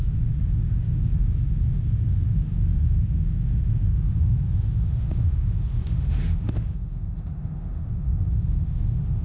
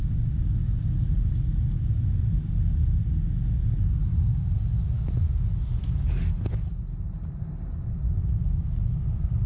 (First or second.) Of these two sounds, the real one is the second